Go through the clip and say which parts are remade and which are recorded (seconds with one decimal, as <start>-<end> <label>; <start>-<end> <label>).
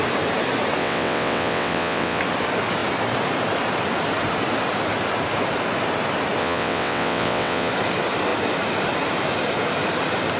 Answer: 0.0-0.8 recorded; 0.8-2.2 remade; 2.2-6.4 recorded; 6.4-7.7 remade; 7.7-10.4 recorded